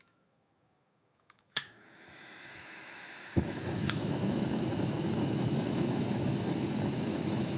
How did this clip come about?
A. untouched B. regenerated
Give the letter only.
B